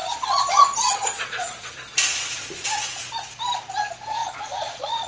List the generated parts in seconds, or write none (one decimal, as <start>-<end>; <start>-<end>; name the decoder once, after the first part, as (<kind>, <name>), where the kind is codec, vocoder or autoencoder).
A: 0.0-3.1 (vocoder, Vocos); 4.2-5.1